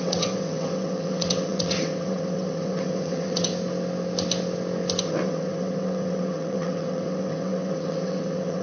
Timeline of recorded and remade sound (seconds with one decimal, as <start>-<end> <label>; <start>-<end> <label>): 0.0-3.5 remade; 3.5-5.0 recorded; 5.0-8.6 remade